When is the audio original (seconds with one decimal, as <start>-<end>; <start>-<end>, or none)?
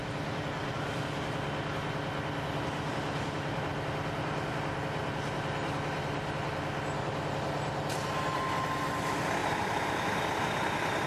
0.8-9.4; 9.9-11.1